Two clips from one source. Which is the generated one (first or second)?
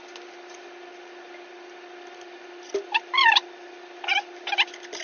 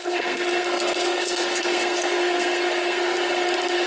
second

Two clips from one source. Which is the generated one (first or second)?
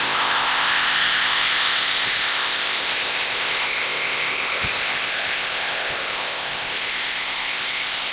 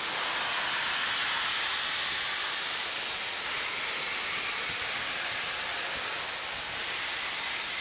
first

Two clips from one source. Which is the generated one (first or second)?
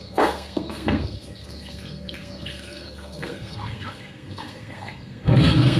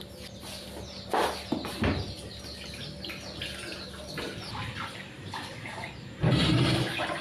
first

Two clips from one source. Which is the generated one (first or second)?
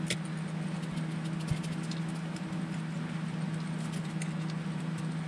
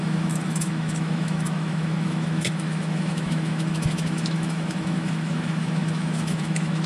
second